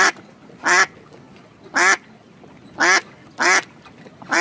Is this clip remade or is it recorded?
recorded